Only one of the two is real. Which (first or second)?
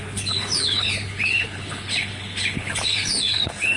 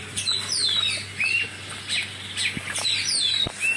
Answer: second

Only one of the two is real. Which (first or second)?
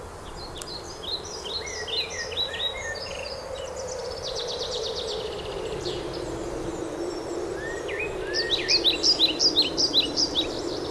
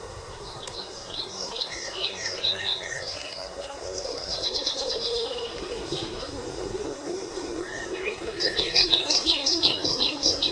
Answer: first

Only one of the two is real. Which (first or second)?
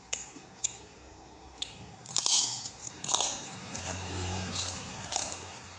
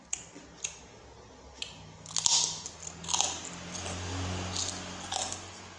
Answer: second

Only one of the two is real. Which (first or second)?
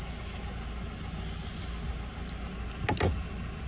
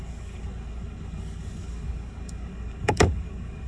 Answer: first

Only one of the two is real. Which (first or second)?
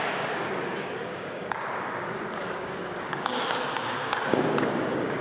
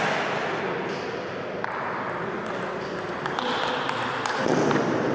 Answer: second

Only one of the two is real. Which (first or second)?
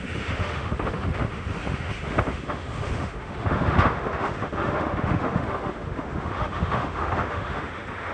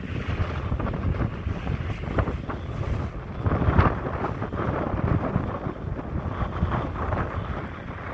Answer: second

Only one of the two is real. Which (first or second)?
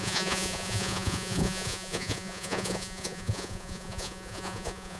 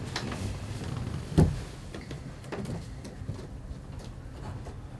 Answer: second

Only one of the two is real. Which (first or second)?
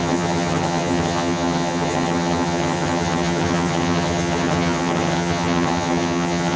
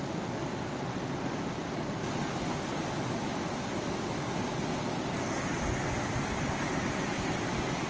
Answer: second